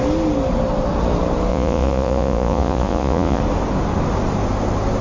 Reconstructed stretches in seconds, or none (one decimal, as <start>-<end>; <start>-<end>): 1.5-3.4